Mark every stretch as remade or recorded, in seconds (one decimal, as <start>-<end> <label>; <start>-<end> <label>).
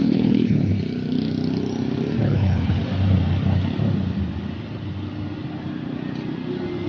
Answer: 0.0-0.7 remade; 0.7-2.2 recorded; 2.2-2.8 remade; 2.8-6.9 recorded